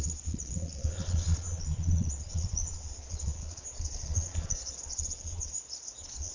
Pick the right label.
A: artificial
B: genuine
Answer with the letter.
A